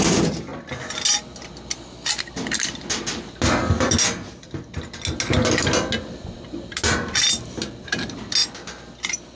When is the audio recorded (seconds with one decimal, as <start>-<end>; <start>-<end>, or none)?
0.0-9.4